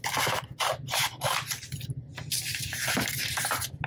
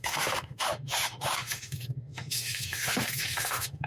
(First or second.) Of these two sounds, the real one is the first